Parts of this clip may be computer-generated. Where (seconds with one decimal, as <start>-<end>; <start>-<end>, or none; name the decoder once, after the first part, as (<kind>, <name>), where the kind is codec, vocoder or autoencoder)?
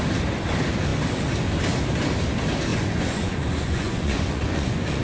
2.7-5.0 (vocoder, Vocos)